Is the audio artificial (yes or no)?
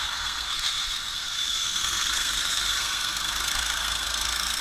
yes